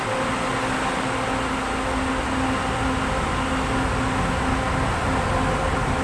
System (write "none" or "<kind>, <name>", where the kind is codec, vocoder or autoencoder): none